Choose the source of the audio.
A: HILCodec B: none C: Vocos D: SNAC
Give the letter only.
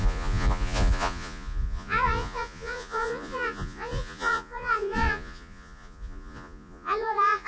C